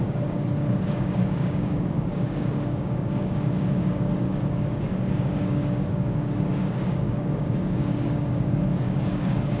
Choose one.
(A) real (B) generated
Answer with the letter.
B